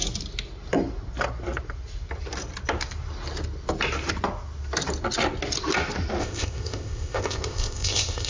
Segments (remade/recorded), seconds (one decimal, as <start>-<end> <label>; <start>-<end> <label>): 0.0-6.2 recorded; 6.2-8.3 remade